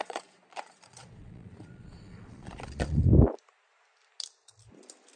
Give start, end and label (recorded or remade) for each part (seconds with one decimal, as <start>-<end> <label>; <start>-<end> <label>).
0.0-3.1 remade; 3.1-5.2 recorded